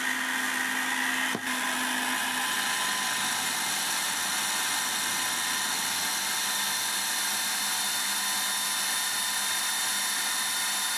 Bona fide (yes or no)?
yes